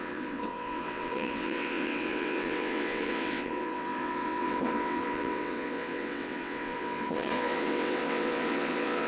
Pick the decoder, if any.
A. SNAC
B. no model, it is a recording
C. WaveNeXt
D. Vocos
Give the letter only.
C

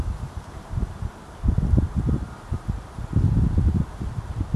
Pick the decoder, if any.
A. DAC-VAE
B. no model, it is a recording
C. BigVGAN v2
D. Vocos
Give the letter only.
B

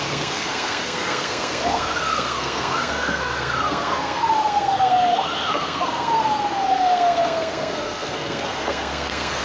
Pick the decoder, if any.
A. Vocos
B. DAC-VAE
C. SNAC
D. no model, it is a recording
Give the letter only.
C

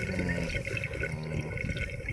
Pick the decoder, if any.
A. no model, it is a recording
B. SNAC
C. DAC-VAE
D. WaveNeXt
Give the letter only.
A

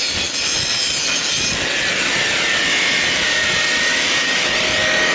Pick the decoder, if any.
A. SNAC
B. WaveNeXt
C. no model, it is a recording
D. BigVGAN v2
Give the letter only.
C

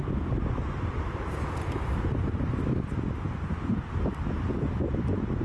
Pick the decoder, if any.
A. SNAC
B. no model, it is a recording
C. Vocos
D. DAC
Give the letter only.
B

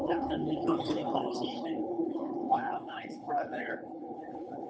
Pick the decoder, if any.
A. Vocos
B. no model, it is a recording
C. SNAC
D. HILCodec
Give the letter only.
D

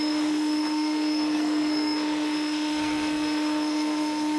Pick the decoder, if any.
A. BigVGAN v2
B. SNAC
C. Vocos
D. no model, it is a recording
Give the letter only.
B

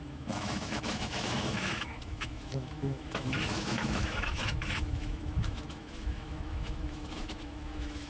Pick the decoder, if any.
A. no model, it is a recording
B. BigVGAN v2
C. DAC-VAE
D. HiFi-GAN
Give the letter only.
C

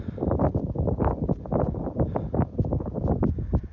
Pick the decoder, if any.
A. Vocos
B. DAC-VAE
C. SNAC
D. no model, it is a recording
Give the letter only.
D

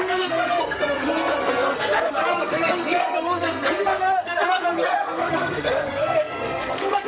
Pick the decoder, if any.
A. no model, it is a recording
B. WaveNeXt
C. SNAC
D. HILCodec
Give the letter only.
C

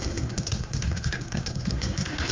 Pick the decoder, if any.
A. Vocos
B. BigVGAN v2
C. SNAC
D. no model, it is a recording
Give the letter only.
C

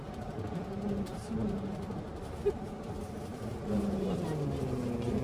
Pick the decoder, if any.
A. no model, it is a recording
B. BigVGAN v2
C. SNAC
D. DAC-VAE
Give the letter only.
A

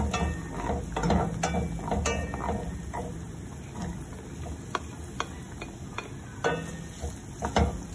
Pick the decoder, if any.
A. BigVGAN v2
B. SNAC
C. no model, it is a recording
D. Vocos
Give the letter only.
C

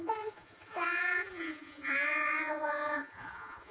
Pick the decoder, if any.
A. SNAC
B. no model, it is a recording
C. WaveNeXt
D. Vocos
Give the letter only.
D